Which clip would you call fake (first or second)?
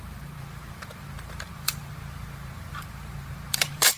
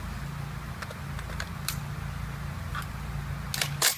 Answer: first